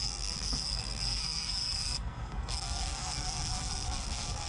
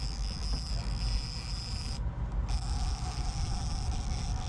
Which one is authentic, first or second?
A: second